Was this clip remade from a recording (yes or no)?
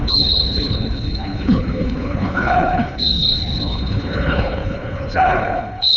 yes